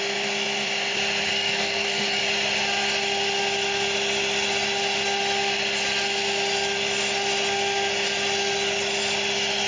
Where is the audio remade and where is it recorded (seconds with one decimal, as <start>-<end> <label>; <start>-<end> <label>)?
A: 0.0-1.3 recorded; 1.3-2.2 remade; 2.2-9.7 recorded